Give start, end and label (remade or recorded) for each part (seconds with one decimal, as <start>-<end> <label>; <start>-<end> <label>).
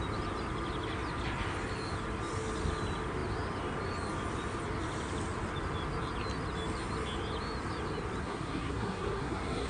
0.0-8.2 recorded; 8.2-9.7 remade